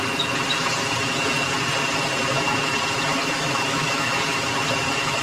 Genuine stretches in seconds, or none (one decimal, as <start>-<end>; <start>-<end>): 0.0-3.1; 4.2-5.2